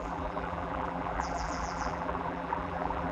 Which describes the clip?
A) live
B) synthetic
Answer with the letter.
B